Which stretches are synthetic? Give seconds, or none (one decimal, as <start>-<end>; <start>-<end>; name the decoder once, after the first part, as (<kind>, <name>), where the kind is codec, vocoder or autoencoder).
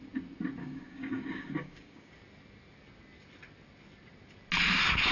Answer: 0.6-2.1 (codec, DAC)